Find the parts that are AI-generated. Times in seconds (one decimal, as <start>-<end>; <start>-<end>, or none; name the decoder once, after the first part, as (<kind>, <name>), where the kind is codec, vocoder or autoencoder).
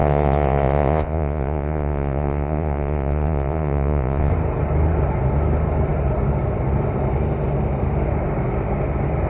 0.0-4.3 (vocoder, Vocos)